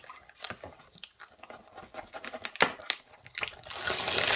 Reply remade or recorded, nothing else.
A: recorded